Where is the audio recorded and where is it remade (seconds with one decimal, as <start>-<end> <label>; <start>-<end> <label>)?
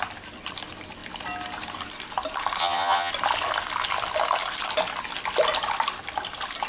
0.0-2.6 recorded; 2.6-3.1 remade; 3.1-6.7 recorded